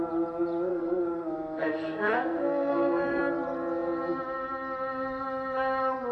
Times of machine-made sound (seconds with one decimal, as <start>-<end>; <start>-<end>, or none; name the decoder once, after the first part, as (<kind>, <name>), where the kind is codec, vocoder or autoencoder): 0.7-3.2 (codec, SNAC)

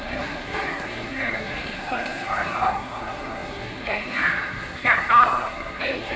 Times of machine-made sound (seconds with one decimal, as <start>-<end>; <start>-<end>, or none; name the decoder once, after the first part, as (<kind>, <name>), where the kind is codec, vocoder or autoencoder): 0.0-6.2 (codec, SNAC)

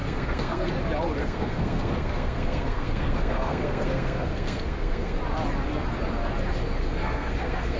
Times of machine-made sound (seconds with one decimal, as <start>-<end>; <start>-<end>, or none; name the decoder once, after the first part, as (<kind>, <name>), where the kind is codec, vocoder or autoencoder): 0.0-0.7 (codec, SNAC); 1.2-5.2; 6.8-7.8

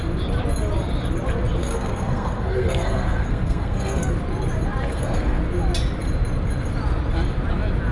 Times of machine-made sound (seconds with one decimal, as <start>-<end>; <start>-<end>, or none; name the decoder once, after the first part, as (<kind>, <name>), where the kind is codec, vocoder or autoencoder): 1.6-4.1 (codec, SNAC); 4.9-5.4